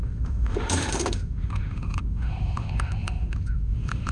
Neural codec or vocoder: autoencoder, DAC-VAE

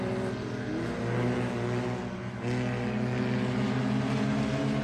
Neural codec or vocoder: none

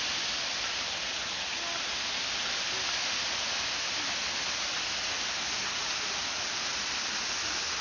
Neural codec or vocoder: none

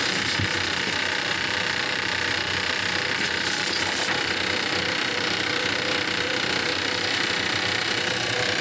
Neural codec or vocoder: vocoder, BigVGAN v2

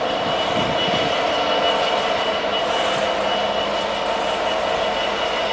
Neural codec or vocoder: none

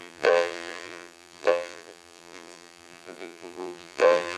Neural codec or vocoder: vocoder, BigVGAN v2